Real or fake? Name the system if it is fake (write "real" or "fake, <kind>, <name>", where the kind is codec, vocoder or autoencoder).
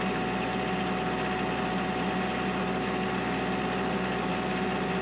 real